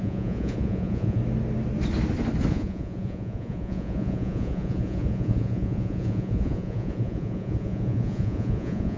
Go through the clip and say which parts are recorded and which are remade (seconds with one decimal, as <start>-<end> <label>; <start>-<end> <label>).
0.0-1.2 remade; 1.2-2.5 recorded; 2.5-9.0 remade